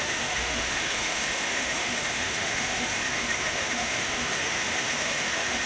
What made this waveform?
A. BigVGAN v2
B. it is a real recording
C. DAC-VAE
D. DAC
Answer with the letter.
C